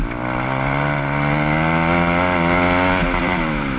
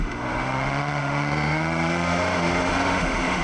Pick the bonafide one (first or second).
first